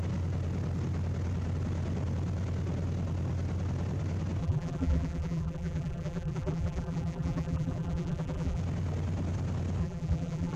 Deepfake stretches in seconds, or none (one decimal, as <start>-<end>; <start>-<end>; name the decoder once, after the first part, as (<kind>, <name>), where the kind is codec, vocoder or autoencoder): 4.4-8.6 (vocoder, BigVGAN v2); 9.8-10.6